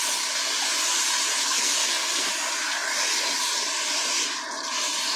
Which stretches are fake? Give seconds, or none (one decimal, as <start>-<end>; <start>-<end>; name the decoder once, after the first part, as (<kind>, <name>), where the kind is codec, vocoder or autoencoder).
1.4-2.3 (codec, SNAC)